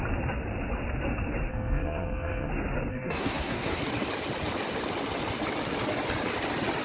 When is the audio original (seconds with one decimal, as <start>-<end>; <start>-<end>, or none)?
0.0-1.5; 2.5-2.9; 3.8-6.8

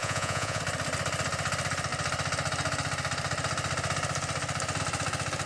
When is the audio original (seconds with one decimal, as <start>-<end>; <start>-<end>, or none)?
0.6-5.5